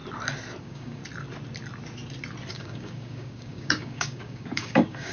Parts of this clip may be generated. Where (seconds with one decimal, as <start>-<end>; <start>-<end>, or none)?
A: 0.6-1.0; 2.5-5.1